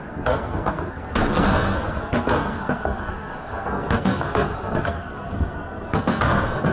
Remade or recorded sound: remade